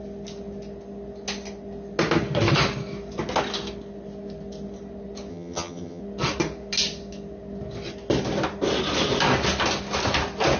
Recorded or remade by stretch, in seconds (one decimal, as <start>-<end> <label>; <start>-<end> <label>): 0.0-5.3 recorded; 5.3-6.0 remade; 6.0-10.6 recorded